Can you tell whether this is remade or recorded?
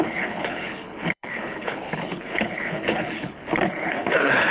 remade